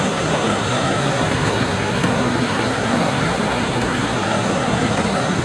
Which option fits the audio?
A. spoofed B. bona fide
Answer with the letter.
A